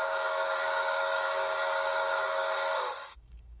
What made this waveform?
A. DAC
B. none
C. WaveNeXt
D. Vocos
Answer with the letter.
A